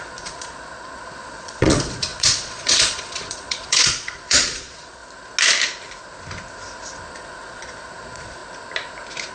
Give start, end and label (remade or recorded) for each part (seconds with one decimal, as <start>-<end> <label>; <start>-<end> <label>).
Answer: 0.0-5.0 remade; 5.0-7.1 recorded; 7.1-8.4 remade; 8.4-9.3 recorded